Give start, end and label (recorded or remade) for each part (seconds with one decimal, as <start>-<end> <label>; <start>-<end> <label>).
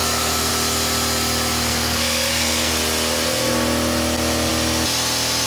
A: 0.0-0.5 remade; 0.5-1.7 recorded; 1.7-2.7 remade; 2.7-5.5 recorded